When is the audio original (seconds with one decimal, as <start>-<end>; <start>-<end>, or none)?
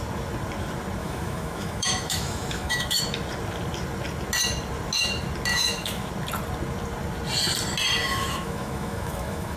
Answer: 0.0-1.0; 3.0-5.5; 6.1-8.0